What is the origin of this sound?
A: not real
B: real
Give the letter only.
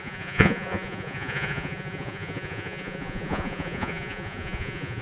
A